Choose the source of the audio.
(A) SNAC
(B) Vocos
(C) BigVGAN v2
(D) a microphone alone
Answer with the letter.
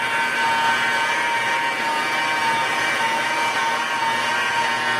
D